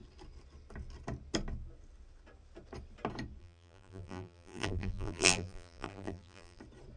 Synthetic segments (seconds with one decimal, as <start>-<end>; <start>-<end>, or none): 3.4-6.6